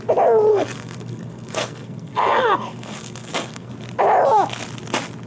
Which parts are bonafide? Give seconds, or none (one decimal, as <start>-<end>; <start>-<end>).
0.0-0.5; 3.7-5.3